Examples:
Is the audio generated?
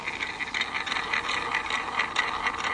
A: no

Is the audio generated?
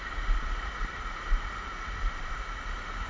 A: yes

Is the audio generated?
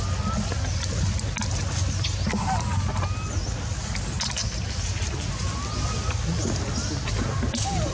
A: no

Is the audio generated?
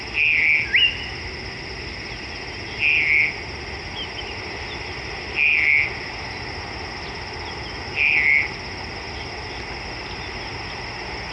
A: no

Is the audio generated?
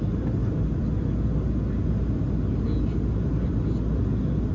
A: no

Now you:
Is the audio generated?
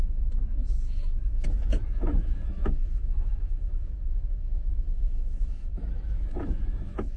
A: yes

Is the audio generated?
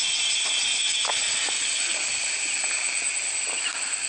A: no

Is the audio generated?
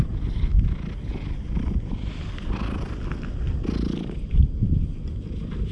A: no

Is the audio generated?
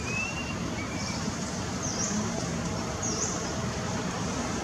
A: yes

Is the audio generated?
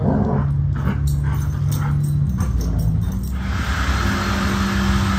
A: no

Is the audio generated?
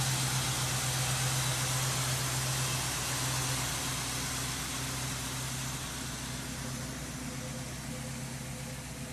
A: no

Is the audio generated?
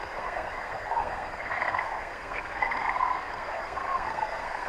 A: yes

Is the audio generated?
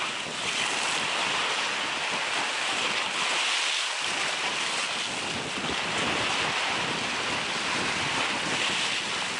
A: no